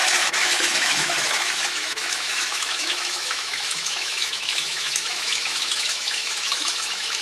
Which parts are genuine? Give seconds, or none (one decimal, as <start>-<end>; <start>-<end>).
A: none